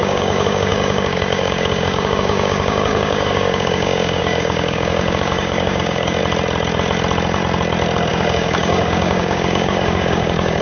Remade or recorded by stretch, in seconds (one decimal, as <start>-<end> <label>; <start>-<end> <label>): 0.0-6.2 remade; 6.2-8.1 recorded; 8.1-10.6 remade